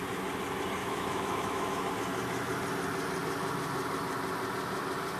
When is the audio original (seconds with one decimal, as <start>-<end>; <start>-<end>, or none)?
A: 0.0-0.8; 1.9-5.2